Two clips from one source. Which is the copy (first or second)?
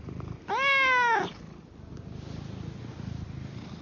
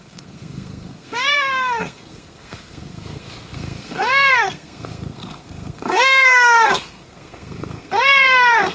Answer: second